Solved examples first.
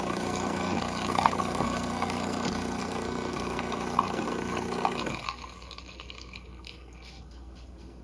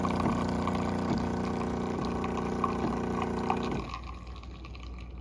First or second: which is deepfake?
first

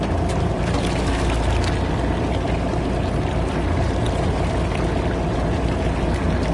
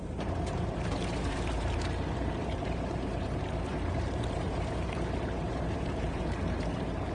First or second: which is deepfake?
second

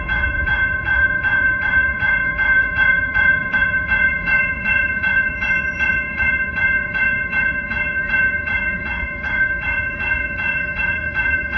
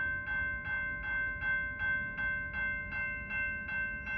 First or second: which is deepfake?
first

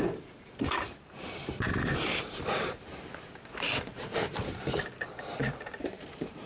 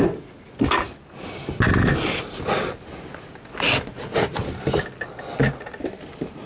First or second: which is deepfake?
first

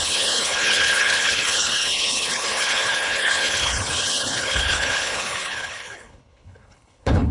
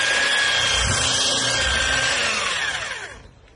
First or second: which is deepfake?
first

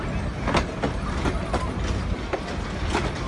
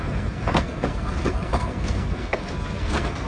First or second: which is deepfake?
second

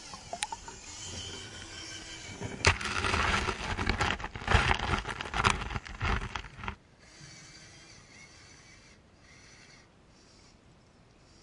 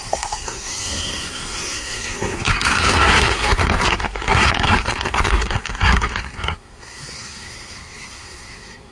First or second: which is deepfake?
second